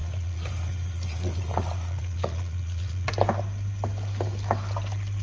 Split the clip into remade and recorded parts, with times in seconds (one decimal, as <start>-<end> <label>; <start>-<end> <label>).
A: 0.0-3.1 remade; 3.1-5.2 recorded